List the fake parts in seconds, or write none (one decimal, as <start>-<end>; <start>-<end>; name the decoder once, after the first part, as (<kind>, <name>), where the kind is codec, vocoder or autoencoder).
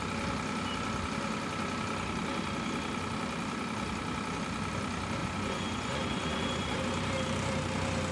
5.2-6.8 (vocoder, Vocos)